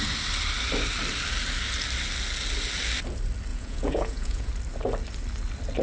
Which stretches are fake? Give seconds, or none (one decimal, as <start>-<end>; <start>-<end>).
3.5-4.5